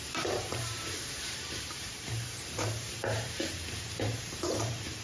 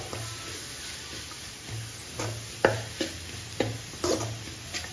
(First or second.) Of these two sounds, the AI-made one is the first